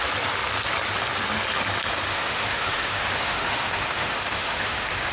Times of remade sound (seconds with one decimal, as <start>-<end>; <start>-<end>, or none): 2.1-5.1

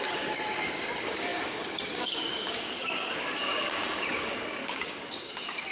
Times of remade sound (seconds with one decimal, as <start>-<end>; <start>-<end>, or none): 0.0-5.7

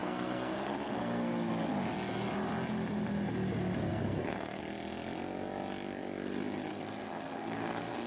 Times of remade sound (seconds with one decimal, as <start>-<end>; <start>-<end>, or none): 0.0-1.5; 3.9-4.6; 6.7-8.1

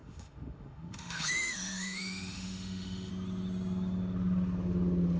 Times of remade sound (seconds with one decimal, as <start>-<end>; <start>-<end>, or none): 0.0-3.1

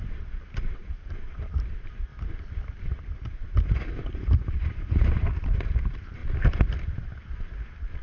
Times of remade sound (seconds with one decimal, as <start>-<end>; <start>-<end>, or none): 0.0-2.1; 3.0-6.2

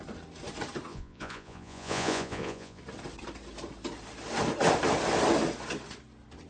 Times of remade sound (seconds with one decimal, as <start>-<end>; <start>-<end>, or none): 0.9-2.8

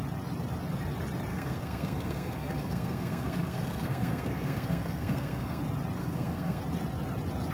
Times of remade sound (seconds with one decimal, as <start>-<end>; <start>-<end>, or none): 1.3-5.6; 6.0-6.6